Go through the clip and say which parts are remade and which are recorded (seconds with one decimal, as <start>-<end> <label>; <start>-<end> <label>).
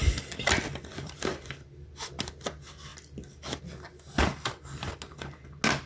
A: 0.0-2.2 remade; 2.2-5.9 recorded